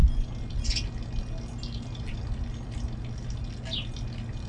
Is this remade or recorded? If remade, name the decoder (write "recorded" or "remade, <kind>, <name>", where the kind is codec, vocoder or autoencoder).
recorded